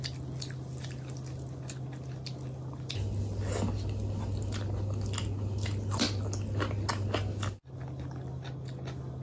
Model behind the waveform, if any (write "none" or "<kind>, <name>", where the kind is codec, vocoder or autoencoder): none